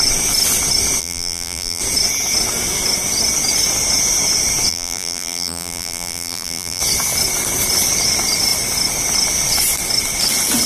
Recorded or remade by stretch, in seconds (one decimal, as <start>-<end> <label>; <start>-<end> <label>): 0.0-1.0 recorded; 1.0-1.8 remade; 1.8-4.7 recorded; 4.7-6.8 remade; 6.8-10.7 recorded